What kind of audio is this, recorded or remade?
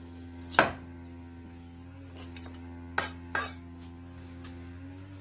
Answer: recorded